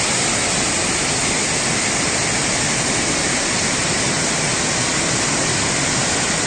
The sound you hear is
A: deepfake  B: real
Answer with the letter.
B